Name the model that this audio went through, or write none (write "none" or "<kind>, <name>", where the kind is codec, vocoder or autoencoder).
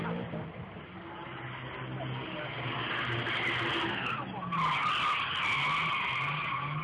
none